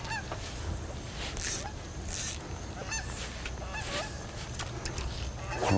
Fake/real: real